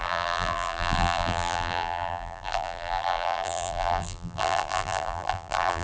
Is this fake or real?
fake